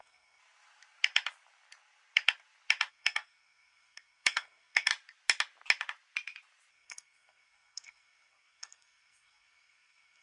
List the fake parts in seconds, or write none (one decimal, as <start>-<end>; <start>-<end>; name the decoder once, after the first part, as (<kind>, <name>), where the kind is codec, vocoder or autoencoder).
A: 0.0-0.4 (codec, SNAC); 2.9-4.9; 6.7-10.2

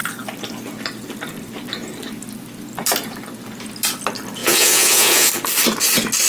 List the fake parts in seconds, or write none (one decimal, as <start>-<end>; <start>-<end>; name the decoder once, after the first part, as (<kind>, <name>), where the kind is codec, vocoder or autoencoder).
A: 4.4-5.3 (vocoder, Vocos)

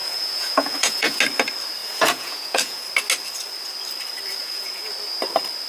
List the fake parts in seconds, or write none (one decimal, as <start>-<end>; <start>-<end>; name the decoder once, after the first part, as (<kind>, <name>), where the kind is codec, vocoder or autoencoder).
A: 0.0-1.2 (vocoder, Vocos); 1.8-2.8; 4.4-4.9

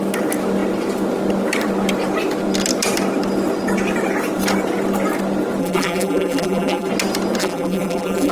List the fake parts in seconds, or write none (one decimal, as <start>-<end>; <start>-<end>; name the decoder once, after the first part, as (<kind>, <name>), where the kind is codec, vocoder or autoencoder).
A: 5.6-6.9 (vocoder, BigVGAN v2); 7.4-8.3

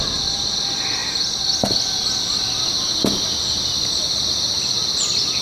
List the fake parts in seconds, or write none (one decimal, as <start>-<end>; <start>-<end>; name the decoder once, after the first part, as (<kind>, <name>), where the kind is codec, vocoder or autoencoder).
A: none

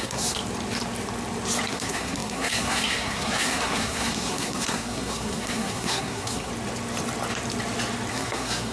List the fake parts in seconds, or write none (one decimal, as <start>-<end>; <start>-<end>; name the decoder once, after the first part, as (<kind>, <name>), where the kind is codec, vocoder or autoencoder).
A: 0.0-0.4 (codec, SNAC); 1.7-6.5; 8.1-8.7

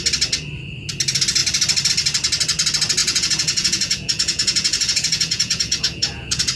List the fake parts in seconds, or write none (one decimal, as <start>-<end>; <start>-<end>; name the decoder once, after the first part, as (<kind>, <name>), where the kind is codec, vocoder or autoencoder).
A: 3.0-6.6 (vocoder, Vocos)

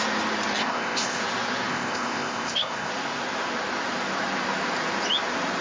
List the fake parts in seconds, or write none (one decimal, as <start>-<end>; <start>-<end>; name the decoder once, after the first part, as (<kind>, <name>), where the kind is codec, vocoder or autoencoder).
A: 0.6-1.2 (codec, ZipCodec); 1.7-2.9